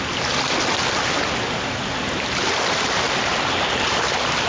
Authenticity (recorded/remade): recorded